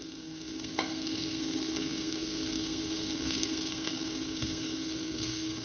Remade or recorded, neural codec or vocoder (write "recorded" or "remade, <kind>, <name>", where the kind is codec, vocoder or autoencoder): remade, codec, SNAC